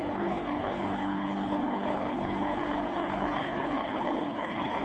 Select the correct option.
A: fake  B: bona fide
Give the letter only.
A